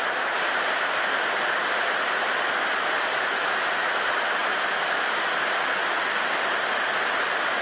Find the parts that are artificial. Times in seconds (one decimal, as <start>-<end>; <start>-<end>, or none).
3.1-3.7